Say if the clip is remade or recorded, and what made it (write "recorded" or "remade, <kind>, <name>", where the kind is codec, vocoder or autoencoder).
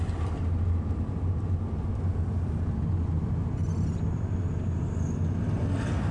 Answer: recorded